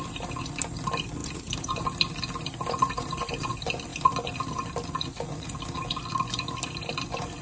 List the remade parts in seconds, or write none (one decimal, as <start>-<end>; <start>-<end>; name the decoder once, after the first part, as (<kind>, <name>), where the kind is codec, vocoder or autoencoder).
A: 1.2-1.8 (vocoder, BigVGAN v2); 2.8-3.5